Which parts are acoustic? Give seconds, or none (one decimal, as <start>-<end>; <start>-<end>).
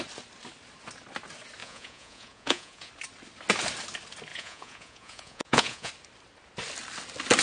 0.0-1.6; 2.9-4.3; 5.9-7.4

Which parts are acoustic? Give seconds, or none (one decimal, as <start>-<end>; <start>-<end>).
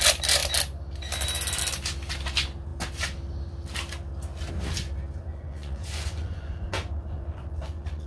0.0-5.3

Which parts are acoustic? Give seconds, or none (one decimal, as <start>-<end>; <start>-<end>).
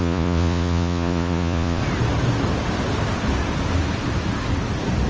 1.8-5.1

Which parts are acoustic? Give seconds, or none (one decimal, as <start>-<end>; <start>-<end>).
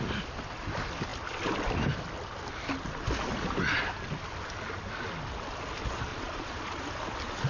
0.0-6.1; 6.8-7.5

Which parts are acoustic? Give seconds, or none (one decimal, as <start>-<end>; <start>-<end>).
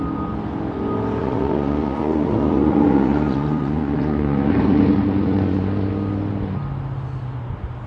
0.0-1.2; 5.9-7.9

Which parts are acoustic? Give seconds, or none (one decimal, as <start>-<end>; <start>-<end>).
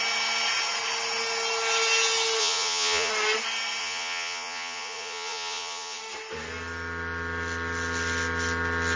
0.0-2.4; 3.1-3.8; 6.0-9.0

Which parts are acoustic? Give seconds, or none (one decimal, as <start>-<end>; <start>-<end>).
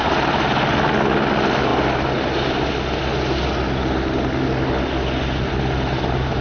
0.0-6.4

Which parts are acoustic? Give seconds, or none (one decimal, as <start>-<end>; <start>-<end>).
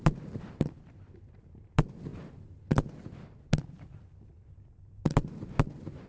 0.0-6.1